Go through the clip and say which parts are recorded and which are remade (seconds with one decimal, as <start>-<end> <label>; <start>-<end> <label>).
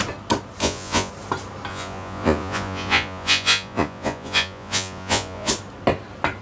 0.0-0.6 recorded; 0.6-1.1 remade; 1.1-1.7 recorded; 1.7-5.5 remade; 5.5-6.4 recorded